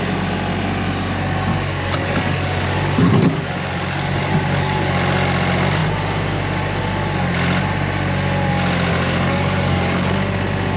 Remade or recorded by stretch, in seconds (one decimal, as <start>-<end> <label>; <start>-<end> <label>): 0.0-1.5 recorded; 1.5-4.8 remade; 4.8-8.9 recorded; 8.9-10.1 remade; 10.1-10.8 recorded